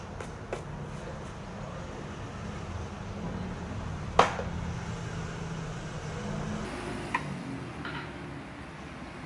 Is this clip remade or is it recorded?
recorded